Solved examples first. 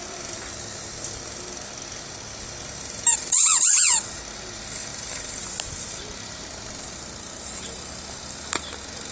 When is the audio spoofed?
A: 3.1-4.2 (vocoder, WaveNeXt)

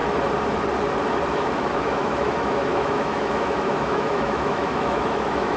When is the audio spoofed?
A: 1.3-5.6 (autoencoder, DAC-VAE)

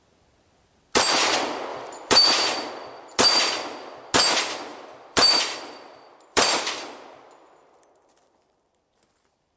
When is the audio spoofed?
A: 1.7-2.7 (vocoder, BigVGAN v2); 4.7-9.6